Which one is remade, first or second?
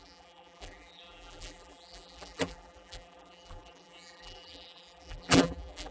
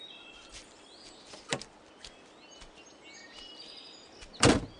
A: first